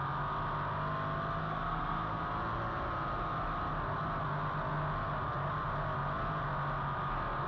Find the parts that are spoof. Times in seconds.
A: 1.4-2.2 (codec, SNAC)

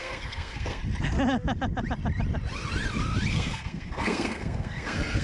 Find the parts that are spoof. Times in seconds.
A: 0.0-0.8 (codec, SNAC); 3.3-5.2

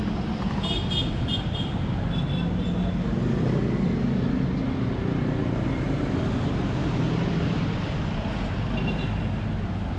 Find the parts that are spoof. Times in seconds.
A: none

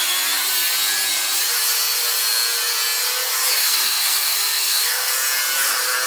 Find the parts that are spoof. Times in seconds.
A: 3.6-5.1 (codec, SNAC)

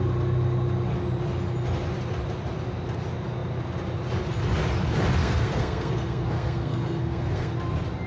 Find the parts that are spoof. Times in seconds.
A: 5.2-7.5 (codec, SNAC)

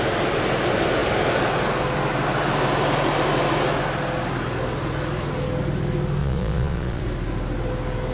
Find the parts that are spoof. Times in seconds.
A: 6.2-7.0 (vocoder, Vocos)

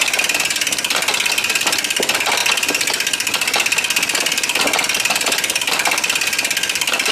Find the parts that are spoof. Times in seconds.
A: none

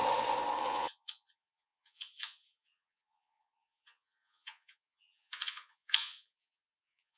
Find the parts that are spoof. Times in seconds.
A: 0.6-7.2 (vocoder, Vocos)